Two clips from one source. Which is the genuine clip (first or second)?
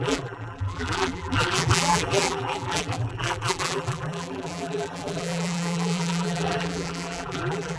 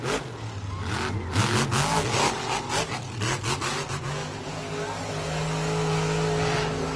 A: second